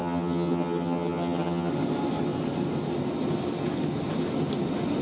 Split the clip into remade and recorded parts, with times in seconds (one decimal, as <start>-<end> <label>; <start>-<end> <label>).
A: 0.0-1.7 remade; 1.7-5.0 recorded